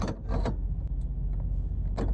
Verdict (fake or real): real